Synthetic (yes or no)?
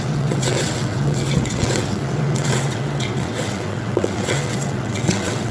yes